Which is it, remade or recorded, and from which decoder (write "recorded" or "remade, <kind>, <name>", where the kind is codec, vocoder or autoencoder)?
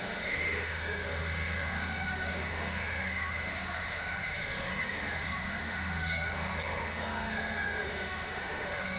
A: remade, autoencoder, DAC-VAE